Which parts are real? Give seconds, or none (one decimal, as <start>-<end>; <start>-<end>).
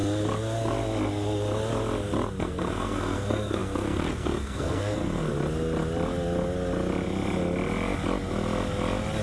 0.0-2.4; 5.3-9.2